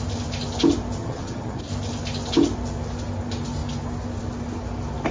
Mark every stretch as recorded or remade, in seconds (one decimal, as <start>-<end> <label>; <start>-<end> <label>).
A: 0.0-1.0 recorded; 1.0-1.6 remade; 1.6-5.1 recorded